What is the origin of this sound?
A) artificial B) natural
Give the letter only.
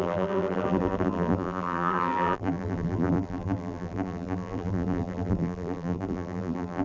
A